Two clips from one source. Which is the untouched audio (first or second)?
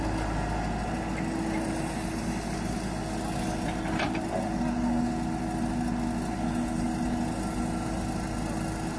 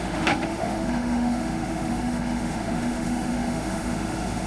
first